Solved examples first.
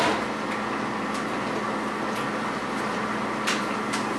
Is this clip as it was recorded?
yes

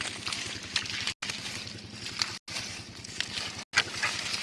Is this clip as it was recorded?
yes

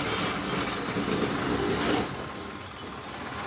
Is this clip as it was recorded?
yes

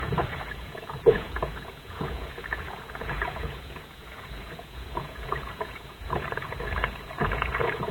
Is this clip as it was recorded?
no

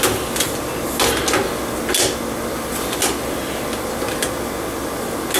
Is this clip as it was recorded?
yes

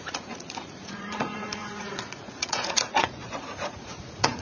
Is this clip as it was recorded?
no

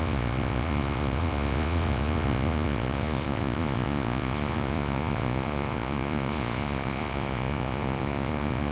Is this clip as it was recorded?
no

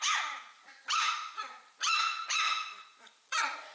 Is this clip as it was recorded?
no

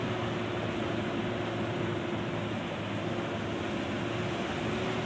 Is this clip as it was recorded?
yes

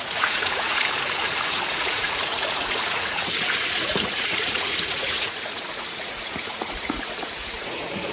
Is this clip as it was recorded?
no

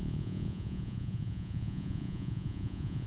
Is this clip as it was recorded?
no